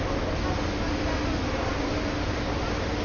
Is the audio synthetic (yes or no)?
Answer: no